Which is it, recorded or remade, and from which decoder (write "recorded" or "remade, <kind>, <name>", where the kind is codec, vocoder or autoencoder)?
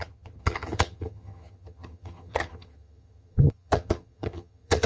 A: remade, vocoder, HiFi-GAN